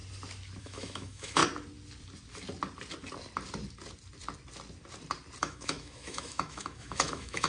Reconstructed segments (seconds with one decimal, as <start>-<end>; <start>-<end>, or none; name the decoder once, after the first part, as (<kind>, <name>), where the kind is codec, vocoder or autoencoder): 0.6-1.4 (autoencoder, DAC-VAE); 5.4-7.5